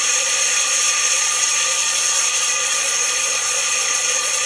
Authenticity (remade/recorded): remade